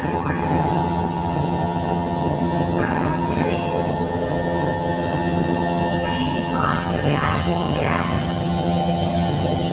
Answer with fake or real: fake